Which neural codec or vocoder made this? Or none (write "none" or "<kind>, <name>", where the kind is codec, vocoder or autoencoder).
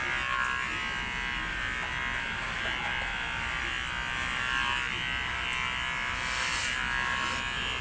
none